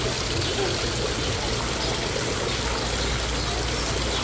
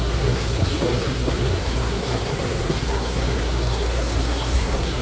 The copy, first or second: second